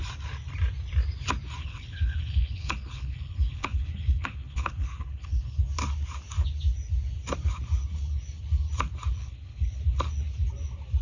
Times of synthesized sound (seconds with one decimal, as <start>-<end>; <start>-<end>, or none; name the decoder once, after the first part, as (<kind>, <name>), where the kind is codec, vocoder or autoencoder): 1.6-5.6 (codec, HILCodec); 9.2-9.8